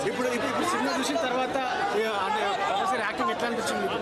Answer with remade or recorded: recorded